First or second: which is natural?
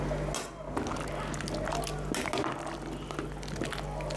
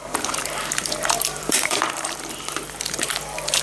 first